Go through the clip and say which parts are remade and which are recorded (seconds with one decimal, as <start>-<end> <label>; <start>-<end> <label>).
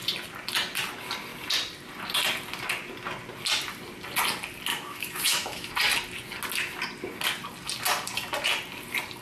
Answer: 0.0-4.7 recorded; 4.7-5.7 remade; 5.7-9.2 recorded